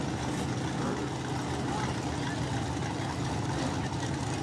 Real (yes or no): yes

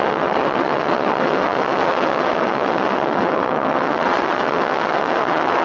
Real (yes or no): no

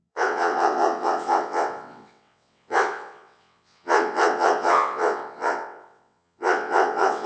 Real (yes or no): no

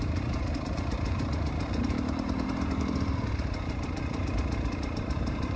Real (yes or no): no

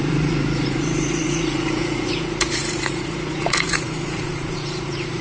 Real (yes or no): no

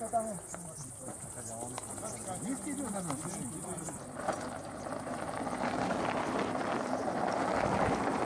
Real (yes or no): yes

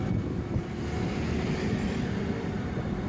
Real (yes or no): yes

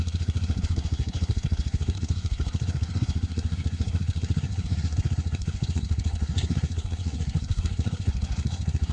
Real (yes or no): no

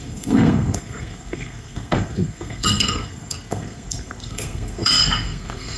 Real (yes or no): no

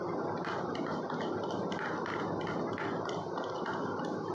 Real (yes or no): yes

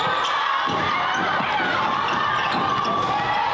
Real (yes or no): yes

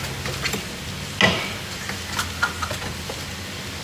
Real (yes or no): yes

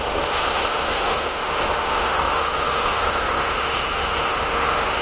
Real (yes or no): no